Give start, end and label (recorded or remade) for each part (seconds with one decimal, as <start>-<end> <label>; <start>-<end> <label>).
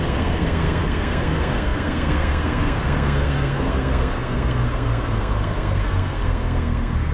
0.0-7.1 remade